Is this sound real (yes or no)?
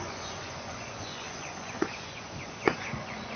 no